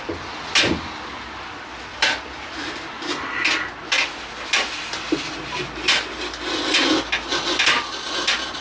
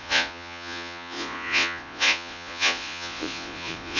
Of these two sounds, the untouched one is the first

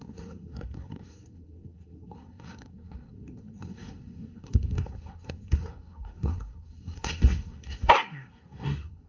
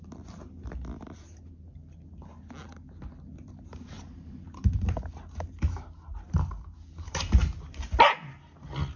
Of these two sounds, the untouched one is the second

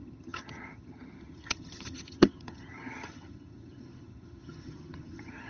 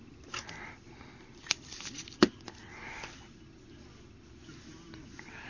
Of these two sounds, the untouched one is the second